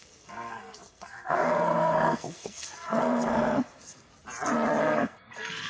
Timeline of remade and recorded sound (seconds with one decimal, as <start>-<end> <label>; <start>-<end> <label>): 0.0-4.1 remade; 4.1-4.8 recorded; 4.8-5.7 remade